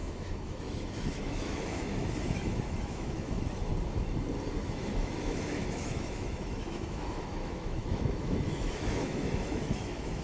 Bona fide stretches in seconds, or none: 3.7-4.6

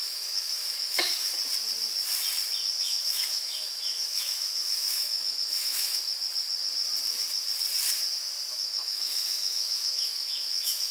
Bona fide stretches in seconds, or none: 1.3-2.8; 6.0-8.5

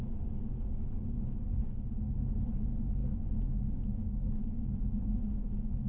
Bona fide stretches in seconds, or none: 0.0-3.0